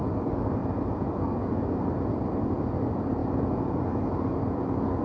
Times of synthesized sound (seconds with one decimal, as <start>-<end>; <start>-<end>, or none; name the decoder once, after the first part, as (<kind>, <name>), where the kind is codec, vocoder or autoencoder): none